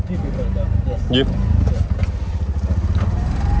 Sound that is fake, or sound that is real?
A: real